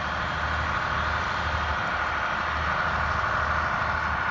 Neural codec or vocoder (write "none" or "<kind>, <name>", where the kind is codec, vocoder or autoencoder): none